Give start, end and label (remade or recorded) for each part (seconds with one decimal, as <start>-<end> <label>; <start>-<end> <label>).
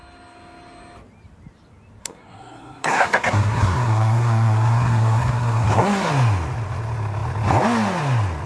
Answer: 0.0-2.0 recorded; 2.0-6.1 remade; 6.1-8.5 recorded